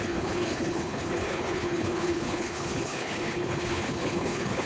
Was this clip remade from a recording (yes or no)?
yes